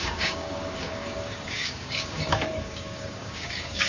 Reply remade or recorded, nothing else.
remade